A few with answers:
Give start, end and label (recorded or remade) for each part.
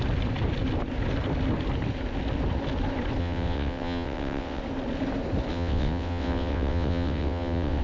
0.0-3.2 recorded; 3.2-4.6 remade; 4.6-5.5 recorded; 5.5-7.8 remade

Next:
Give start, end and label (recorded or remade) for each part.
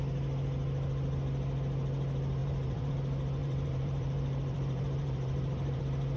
0.0-2.4 recorded; 2.4-2.9 remade; 2.9-3.4 recorded; 3.4-5.8 remade; 5.8-6.2 recorded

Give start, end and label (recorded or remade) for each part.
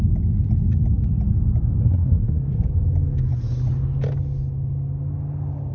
0.0-1.8 recorded; 1.8-2.7 remade; 2.7-5.7 recorded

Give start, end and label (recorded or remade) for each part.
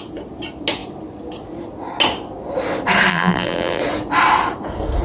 0.0-3.1 recorded; 3.1-3.8 remade; 3.8-5.0 recorded